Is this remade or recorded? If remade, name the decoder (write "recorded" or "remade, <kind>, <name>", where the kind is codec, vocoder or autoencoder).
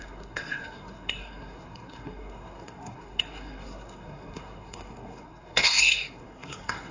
remade, codec, SNAC